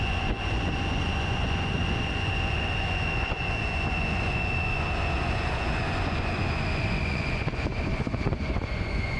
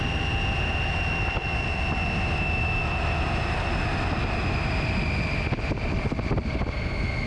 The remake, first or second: first